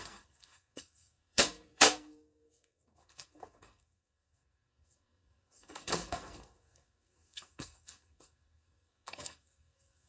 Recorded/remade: remade